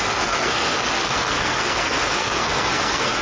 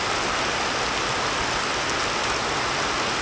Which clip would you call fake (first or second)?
first